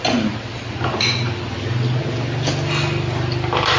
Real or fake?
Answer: real